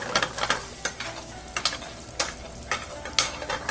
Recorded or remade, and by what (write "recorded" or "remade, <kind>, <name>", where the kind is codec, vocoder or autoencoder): recorded